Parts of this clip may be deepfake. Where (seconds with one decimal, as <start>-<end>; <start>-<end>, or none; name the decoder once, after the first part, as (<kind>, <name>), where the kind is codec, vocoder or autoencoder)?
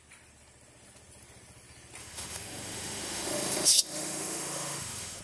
2.0-5.2 (autoencoder, DAC-VAE)